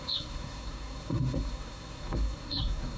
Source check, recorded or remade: remade